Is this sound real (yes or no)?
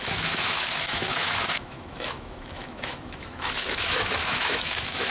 no